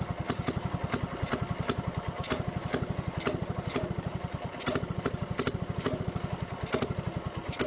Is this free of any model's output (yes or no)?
yes